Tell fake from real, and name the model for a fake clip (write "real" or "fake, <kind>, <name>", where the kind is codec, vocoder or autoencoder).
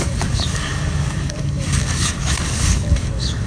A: fake, codec, DAC